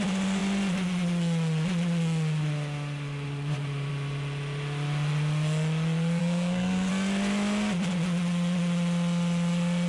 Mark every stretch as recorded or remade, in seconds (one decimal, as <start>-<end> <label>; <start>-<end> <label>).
0.0-6.2 recorded; 6.2-6.9 remade; 6.9-9.9 recorded